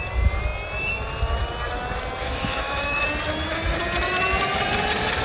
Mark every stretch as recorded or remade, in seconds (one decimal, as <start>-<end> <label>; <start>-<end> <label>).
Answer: 0.0-2.2 recorded; 2.2-3.0 remade; 3.0-5.2 recorded